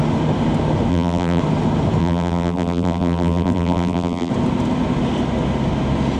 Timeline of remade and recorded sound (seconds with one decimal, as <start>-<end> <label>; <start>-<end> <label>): 0.0-0.9 recorded; 0.9-1.4 remade; 1.4-2.0 recorded; 2.0-4.3 remade; 4.3-6.2 recorded